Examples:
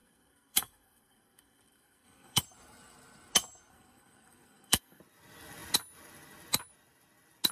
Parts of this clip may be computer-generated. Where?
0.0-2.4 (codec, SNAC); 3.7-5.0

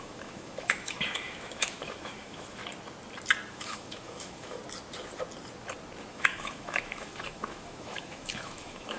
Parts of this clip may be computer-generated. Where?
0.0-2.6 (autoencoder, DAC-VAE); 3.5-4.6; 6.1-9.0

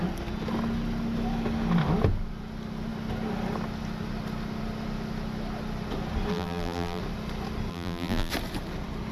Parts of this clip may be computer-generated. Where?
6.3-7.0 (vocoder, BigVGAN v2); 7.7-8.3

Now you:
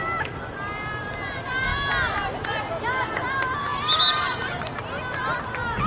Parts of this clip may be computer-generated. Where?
none